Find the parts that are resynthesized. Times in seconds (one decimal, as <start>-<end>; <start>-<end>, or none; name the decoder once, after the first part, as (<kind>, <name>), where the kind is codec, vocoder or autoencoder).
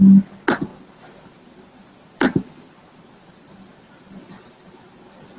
none